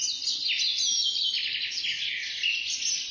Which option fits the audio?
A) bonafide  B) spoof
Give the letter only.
A